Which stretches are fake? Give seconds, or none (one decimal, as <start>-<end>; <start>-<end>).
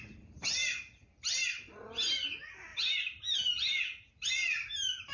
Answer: none